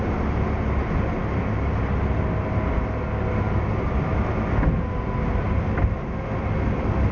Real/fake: real